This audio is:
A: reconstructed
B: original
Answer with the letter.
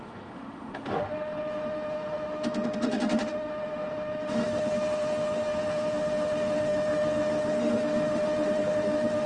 A